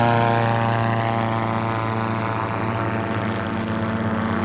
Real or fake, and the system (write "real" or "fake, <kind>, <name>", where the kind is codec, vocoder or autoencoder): real